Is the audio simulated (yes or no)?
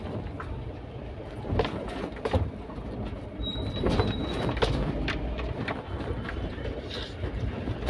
yes